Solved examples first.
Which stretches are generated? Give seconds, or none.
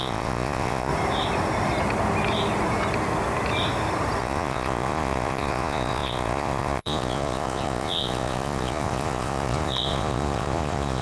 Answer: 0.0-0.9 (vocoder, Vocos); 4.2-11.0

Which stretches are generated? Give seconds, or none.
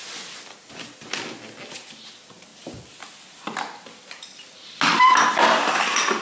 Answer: none